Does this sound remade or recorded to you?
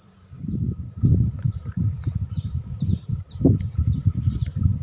remade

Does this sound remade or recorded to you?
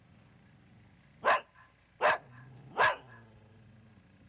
recorded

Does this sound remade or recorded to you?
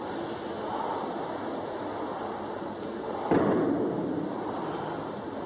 recorded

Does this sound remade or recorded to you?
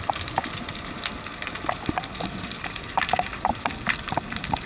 remade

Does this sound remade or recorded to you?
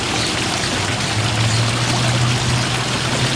recorded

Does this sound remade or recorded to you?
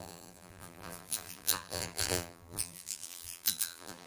remade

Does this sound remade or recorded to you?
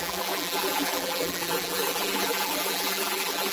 remade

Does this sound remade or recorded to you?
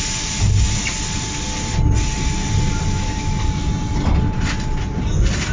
recorded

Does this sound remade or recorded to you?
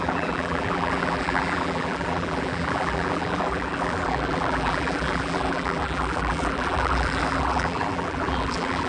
remade